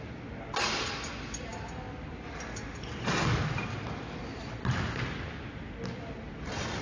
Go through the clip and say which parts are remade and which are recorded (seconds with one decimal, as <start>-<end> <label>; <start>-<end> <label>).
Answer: 0.0-6.8 recorded